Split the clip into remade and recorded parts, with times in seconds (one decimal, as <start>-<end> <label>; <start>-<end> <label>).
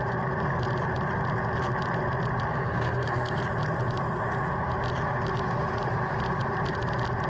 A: 0.0-2.5 recorded; 2.5-3.4 remade; 3.4-7.3 recorded